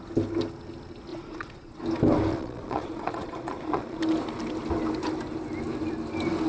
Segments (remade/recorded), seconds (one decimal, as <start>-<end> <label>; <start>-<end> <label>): 0.0-1.1 recorded; 1.1-1.8 remade; 1.8-2.3 recorded; 2.3-4.0 remade; 4.0-6.5 recorded